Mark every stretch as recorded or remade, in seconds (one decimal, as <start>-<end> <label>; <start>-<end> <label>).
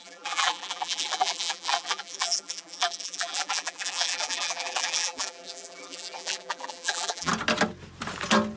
0.0-7.3 remade; 7.3-8.6 recorded